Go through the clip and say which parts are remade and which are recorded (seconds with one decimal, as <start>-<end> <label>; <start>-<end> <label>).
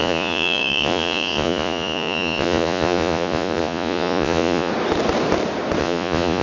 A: 0.0-4.7 remade; 4.7-5.8 recorded; 5.8-6.4 remade